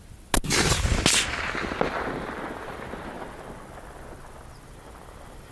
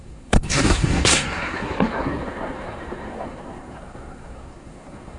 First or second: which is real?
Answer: first